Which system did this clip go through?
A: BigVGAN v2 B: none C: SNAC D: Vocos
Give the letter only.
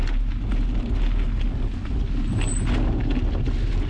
B